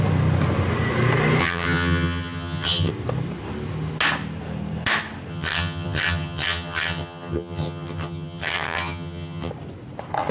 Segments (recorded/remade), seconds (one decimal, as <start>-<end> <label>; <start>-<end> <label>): 0.0-1.4 recorded; 1.4-2.9 remade; 2.9-5.3 recorded; 5.3-9.5 remade; 9.5-10.3 recorded